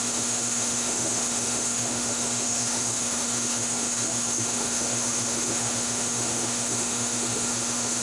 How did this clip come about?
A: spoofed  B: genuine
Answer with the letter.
A